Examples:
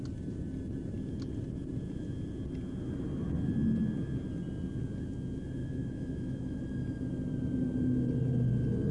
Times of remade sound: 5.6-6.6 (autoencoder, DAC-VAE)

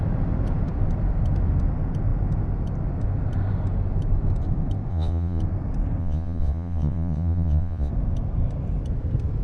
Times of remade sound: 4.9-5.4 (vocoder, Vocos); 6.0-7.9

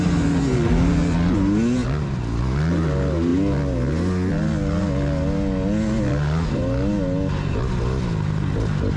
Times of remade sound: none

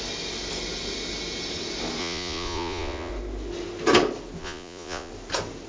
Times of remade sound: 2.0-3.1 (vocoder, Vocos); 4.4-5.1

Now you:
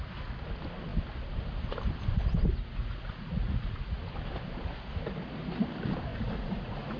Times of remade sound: 2.7-4.0 (vocoder, Vocos); 6.1-7.0

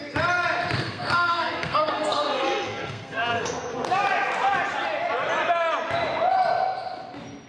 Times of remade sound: 0.8-3.7 (codec, SNAC)

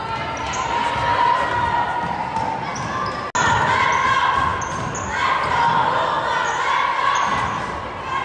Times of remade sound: none